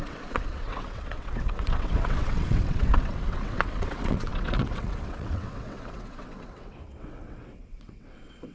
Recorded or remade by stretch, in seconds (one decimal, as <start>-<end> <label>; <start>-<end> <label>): 0.0-8.5 remade